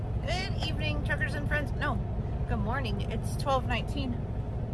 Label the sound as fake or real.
real